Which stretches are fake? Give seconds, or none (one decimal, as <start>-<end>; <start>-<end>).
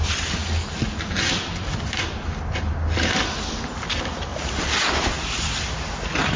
none